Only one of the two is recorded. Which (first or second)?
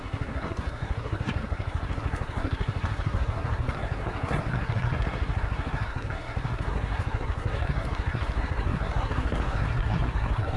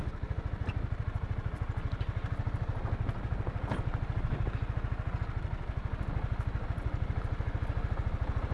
second